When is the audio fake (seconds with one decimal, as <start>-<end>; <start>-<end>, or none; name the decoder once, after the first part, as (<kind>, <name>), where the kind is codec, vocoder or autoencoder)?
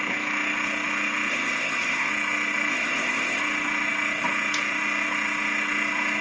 1.3-2.1 (codec, ZipCodec); 2.7-3.4